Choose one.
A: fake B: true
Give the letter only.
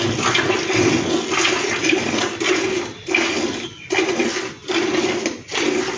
B